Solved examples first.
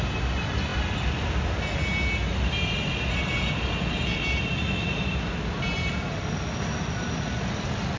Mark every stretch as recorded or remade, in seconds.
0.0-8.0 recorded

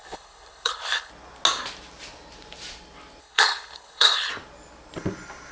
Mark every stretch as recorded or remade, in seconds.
0.0-1.1 remade; 1.1-3.2 recorded; 3.2-4.3 remade; 4.3-5.5 recorded

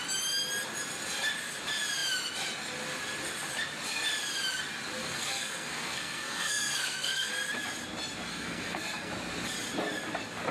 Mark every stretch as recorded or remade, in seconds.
0.0-5.0 recorded; 5.0-7.3 remade; 7.3-8.3 recorded; 8.3-9.1 remade; 9.1-10.5 recorded

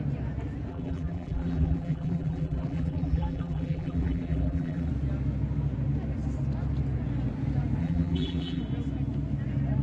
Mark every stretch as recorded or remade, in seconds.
0.0-0.7 recorded; 0.7-4.9 remade; 4.9-7.8 recorded; 7.8-8.6 remade; 8.6-9.8 recorded

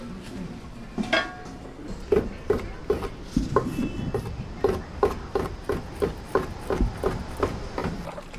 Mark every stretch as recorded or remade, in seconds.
0.0-7.8 recorded; 7.8-8.4 remade

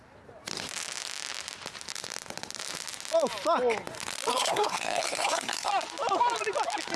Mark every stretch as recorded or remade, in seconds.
0.0-4.3 recorded; 4.3-5.7 remade; 5.7-7.0 recorded

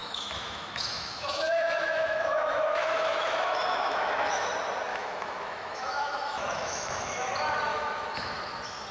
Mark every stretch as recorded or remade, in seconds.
0.0-4.5 remade; 4.5-4.9 recorded; 4.9-7.3 remade; 7.3-7.7 recorded; 7.7-8.3 remade; 8.3-8.9 recorded